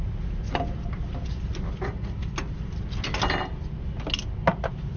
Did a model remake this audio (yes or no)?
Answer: no